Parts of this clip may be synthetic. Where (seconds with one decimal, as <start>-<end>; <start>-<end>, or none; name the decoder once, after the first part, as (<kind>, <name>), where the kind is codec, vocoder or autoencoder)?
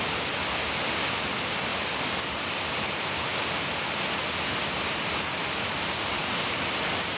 0.0-1.7 (vocoder, BigVGAN v2); 2.3-3.3; 6.1-7.2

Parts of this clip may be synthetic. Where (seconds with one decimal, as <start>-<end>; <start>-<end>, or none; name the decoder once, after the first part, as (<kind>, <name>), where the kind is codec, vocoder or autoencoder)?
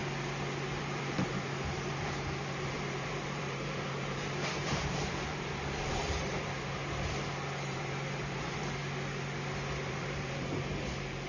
0.8-6.8 (vocoder, BigVGAN v2); 7.7-8.8; 9.9-11.3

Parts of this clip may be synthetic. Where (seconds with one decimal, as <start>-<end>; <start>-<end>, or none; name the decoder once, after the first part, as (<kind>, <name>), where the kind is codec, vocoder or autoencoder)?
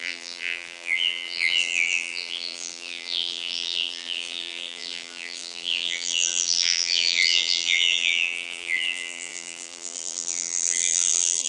0.0-11.5 (vocoder, BigVGAN v2)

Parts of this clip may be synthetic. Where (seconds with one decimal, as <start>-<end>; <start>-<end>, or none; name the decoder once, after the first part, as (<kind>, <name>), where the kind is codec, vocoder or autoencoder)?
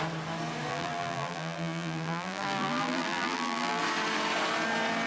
0.7-3.8 (vocoder, BigVGAN v2)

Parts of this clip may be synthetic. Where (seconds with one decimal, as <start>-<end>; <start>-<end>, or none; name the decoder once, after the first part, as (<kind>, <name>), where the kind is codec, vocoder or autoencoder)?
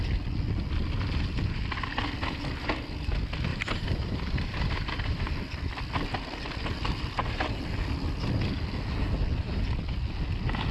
3.5-5.2 (vocoder, BigVGAN v2)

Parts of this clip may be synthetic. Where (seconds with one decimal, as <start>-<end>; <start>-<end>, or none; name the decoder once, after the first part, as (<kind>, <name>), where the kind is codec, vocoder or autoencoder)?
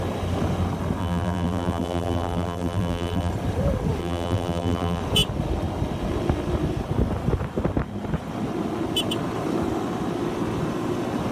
1.0-3.3 (vocoder, BigVGAN v2); 4.0-5.0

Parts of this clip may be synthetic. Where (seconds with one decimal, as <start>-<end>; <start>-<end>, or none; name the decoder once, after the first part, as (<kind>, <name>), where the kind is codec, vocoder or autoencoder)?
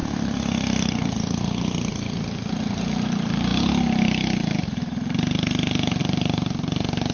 0.0-1.9 (vocoder, BigVGAN v2)